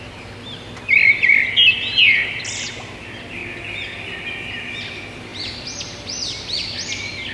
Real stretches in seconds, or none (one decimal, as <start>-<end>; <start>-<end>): 0.0-7.3